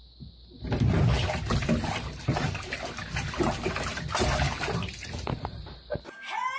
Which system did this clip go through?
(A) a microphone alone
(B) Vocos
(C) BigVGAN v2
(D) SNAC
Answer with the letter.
A